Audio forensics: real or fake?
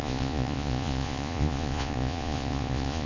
fake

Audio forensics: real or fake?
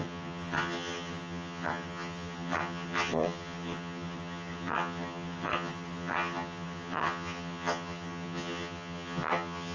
fake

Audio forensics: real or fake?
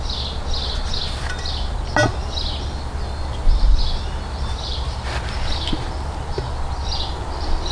real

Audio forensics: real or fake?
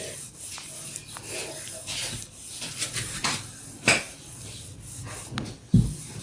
real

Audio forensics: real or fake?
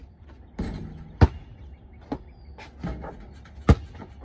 real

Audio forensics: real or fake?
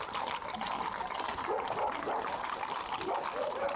real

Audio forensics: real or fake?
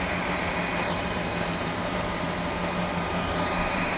fake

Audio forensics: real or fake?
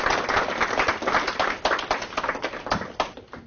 real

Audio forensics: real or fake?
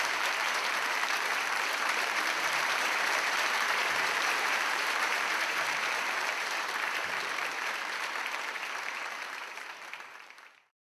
fake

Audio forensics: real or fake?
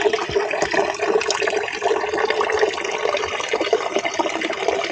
real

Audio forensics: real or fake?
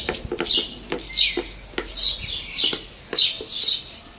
real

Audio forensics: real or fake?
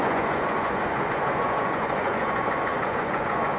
fake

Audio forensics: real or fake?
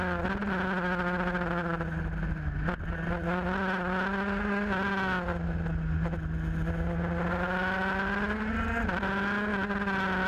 real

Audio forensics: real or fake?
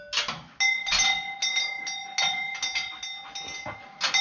real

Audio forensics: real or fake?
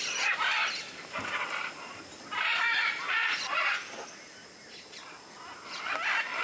real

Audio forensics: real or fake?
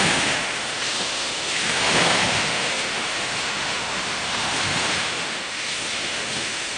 fake